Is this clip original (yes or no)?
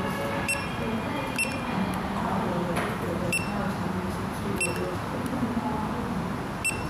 yes